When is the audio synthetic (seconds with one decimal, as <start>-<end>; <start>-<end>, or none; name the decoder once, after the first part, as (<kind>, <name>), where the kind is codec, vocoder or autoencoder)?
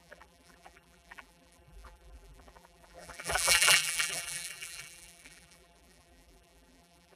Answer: 0.0-7.2 (vocoder, BigVGAN v2)